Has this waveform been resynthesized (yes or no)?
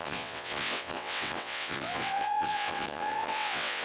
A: yes